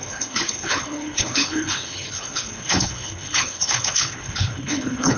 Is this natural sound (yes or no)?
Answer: no